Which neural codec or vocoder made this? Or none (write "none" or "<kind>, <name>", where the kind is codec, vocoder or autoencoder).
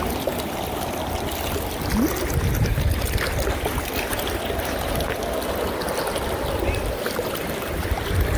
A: none